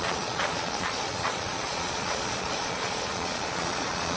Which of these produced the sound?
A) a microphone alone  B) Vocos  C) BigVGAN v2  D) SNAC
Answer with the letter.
B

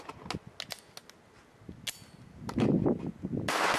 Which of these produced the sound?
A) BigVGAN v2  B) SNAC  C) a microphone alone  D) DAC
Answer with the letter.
C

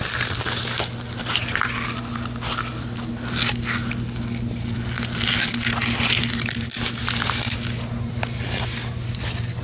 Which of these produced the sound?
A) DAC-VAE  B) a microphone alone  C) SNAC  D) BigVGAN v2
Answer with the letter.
B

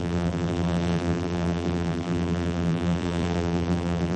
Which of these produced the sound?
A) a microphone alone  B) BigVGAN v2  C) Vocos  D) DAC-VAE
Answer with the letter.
B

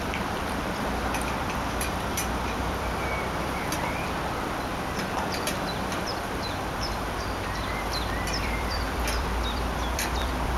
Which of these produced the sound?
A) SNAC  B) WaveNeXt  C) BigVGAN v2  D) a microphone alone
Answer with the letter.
C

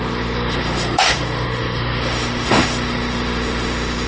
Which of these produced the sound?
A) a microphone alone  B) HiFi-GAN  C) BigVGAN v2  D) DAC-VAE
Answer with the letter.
D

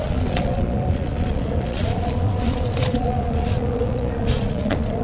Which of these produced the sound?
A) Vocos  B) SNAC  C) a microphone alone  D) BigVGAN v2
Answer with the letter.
A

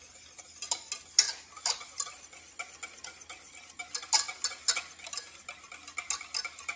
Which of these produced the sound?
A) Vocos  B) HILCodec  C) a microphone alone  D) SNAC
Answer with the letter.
C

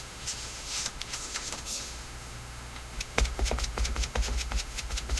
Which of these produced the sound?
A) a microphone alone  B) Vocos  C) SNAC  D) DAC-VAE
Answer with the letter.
D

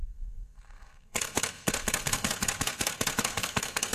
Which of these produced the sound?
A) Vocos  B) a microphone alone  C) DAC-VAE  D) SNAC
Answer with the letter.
D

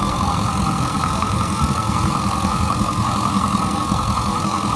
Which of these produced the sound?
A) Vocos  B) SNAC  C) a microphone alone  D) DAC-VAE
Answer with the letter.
B